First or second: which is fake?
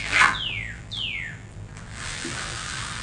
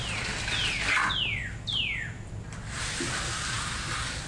first